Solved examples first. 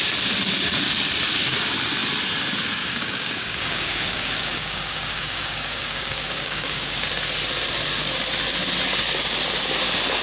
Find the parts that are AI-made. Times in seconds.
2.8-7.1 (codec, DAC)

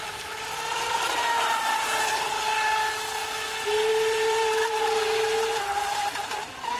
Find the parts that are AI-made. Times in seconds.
3.9-4.8 (vocoder, BigVGAN v2)

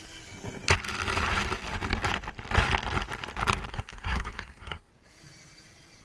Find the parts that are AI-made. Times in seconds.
3.7-4.9 (codec, SNAC)

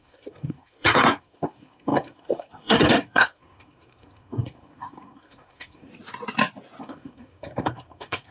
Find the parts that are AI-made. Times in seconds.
0.0-5.9 (codec, SNAC); 6.8-8.3

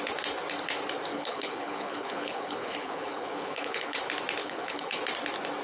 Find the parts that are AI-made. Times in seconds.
1.1-4.0 (codec, HILCodec); 4.4-5.0

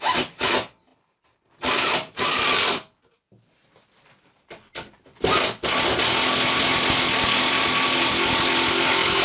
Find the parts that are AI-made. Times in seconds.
none

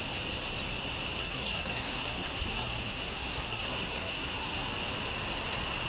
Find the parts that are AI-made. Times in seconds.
1.2-4.7 (codec, SNAC)

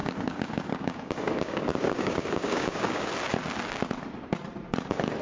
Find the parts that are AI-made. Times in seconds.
0.0-3.1 (codec, DAC)